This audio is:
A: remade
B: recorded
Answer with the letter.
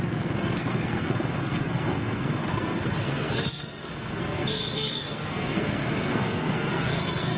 A